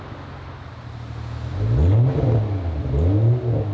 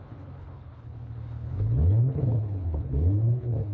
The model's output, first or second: second